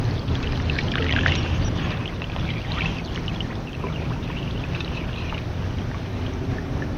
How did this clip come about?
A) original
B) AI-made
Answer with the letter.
A